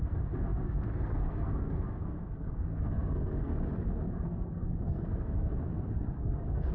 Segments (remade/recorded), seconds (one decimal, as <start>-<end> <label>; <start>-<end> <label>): 0.0-3.5 remade; 3.5-4.1 recorded; 4.1-6.7 remade